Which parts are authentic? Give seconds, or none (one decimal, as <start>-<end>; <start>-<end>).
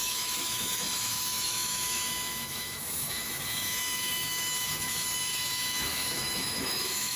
none